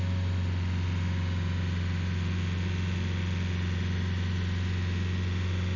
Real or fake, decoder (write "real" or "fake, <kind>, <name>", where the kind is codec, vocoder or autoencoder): real